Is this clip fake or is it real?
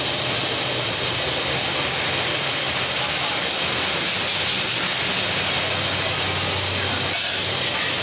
real